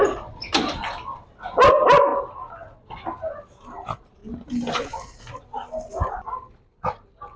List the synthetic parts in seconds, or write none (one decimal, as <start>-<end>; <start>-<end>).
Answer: none